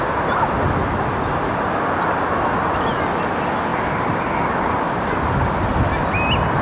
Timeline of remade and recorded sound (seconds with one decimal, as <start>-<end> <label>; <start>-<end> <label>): 0.0-6.6 recorded